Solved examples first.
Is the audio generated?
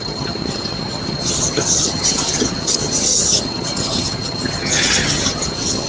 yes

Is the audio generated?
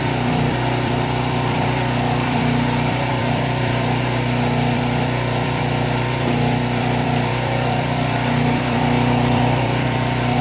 yes